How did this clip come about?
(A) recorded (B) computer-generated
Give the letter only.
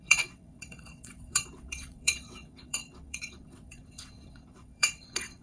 B